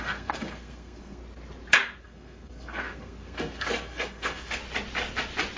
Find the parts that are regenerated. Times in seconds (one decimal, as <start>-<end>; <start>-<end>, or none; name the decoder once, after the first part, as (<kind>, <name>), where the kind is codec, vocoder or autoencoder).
0.0-1.2 (codec, SNAC); 2.0-4.6